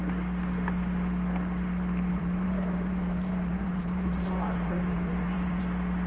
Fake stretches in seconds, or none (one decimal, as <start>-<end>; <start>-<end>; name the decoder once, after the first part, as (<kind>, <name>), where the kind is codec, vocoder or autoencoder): 2.1-5.6 (vocoder, BigVGAN v2)